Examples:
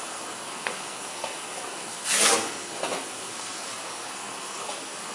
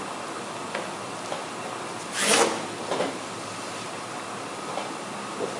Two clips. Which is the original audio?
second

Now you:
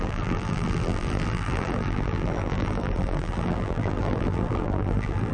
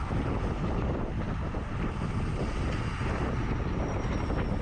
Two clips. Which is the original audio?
second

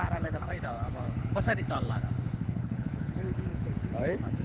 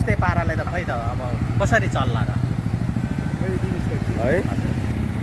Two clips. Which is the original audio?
second